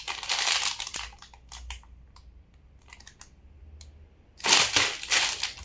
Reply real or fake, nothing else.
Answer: real